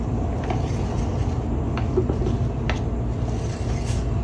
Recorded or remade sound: recorded